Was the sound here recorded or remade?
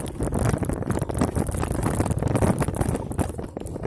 remade